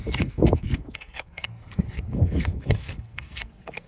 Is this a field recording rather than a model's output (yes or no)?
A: no